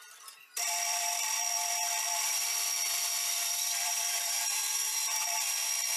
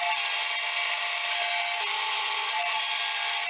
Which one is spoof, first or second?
first